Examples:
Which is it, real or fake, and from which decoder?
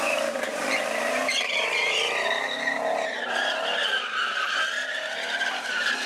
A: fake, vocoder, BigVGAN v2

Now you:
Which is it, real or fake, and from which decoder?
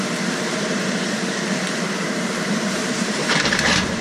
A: fake, vocoder, BigVGAN v2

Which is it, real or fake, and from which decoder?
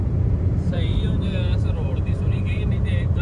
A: fake, vocoder, BigVGAN v2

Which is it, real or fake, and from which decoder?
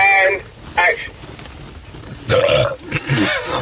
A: real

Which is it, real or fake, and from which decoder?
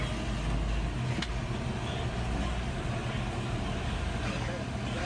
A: real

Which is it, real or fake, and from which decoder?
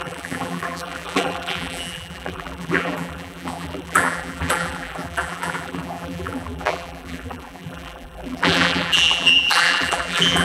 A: fake, vocoder, BigVGAN v2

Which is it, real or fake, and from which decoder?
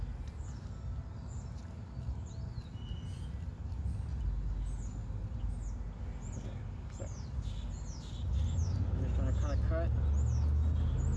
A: real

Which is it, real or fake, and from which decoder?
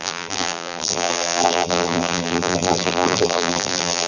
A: fake, vocoder, BigVGAN v2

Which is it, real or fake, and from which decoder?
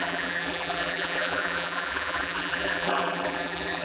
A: fake, vocoder, BigVGAN v2